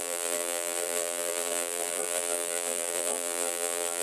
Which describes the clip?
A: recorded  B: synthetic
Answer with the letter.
B